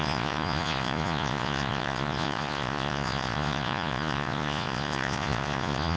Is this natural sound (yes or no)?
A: no